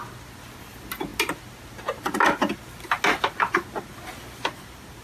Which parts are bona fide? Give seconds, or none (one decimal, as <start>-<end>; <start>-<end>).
0.0-5.0